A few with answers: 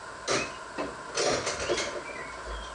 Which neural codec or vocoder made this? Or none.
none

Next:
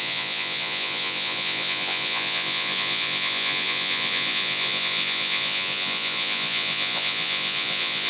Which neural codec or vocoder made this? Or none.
vocoder, Vocos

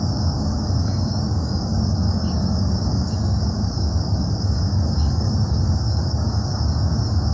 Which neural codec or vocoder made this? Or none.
codec, DAC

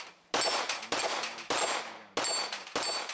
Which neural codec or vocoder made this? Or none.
none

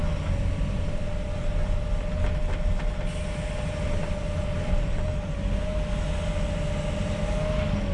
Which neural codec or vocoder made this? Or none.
none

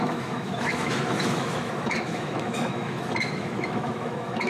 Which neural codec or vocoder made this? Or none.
autoencoder, DAC-VAE